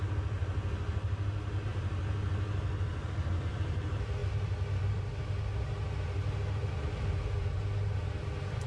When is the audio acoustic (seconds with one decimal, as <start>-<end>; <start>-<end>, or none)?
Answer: 0.0-4.2; 5.0-8.7

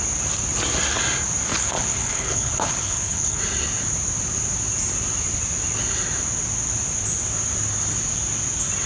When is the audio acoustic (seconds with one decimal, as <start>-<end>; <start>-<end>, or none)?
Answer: 0.0-1.5; 3.4-8.9

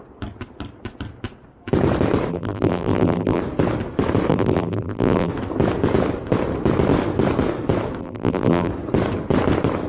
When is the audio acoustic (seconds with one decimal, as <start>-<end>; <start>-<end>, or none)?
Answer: 0.0-2.3; 3.4-4.3; 5.3-8.0; 8.7-9.9

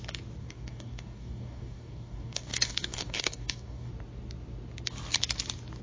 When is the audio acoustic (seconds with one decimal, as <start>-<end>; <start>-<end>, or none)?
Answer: 0.0-0.4; 3.9-5.8

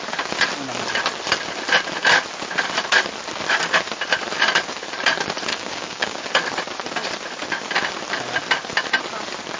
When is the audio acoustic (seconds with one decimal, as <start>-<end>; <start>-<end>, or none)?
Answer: 0.0-5.5; 6.2-9.6